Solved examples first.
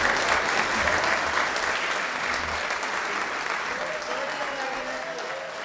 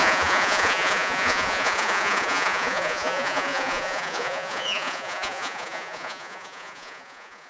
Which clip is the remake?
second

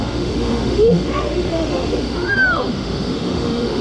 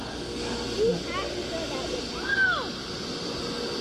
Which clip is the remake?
first